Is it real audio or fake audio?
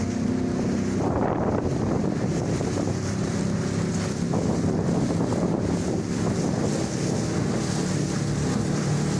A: real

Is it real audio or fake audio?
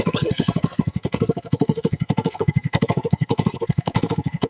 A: fake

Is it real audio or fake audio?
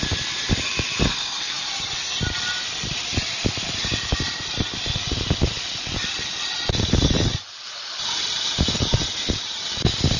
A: real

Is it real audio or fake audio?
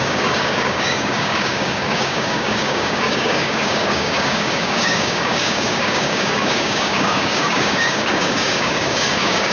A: fake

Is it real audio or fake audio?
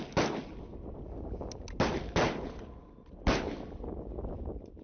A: real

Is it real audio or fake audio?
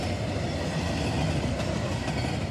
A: real